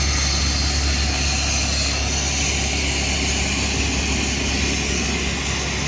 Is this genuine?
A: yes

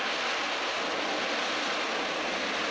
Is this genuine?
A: yes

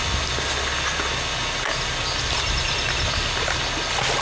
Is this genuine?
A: yes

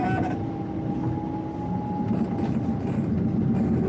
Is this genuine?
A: yes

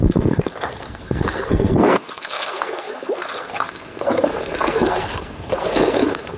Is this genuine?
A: no